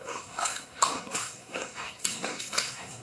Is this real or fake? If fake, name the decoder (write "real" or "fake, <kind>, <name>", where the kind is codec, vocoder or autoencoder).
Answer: fake, codec, SNAC